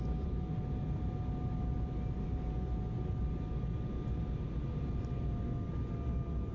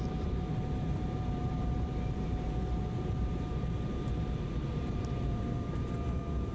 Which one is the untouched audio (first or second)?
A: first